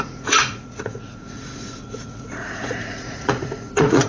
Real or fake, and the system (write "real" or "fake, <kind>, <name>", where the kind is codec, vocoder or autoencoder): fake, vocoder, Vocos